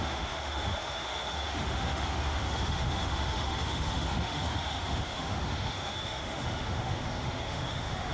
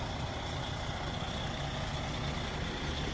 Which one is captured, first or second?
second